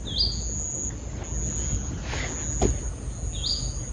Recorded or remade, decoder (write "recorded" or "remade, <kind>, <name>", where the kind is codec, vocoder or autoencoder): recorded